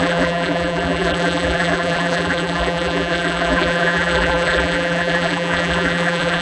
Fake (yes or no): yes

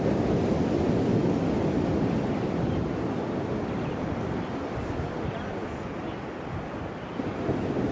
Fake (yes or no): no